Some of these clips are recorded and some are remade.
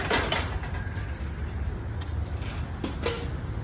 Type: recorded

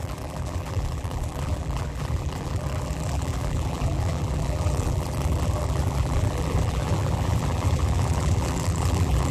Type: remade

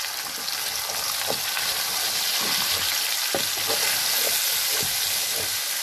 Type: recorded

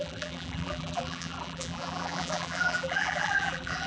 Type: remade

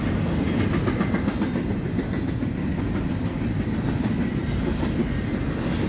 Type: recorded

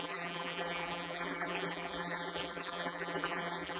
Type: remade